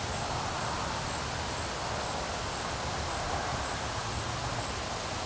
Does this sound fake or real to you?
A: real